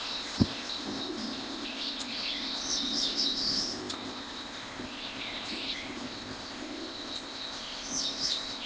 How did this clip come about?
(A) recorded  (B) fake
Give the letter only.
B